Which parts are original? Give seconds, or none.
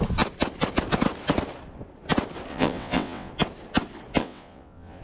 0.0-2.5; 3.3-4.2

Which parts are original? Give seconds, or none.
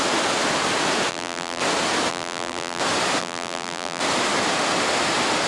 0.0-1.1; 1.6-2.1; 2.8-3.2; 4.0-5.5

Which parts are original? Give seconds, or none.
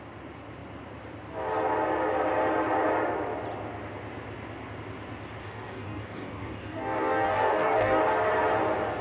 0.0-5.4; 8.0-9.0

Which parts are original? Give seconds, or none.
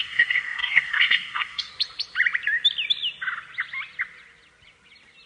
1.7-5.3